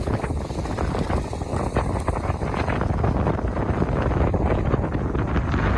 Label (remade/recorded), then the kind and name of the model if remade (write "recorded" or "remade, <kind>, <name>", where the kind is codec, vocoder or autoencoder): recorded